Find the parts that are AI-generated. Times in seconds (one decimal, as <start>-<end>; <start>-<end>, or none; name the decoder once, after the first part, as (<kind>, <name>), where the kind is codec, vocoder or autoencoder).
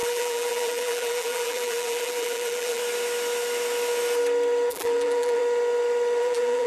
0.0-2.8 (vocoder, BigVGAN v2); 4.7-5.4; 6.2-6.7